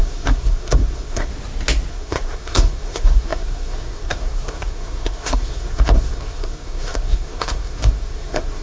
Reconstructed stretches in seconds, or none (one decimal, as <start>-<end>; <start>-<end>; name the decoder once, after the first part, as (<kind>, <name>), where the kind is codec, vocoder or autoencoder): 0.0-1.3 (codec, SNAC); 1.9-8.6